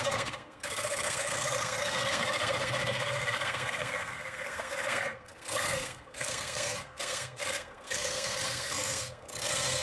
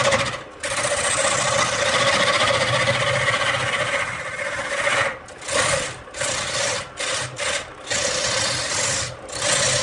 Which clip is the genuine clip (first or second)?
second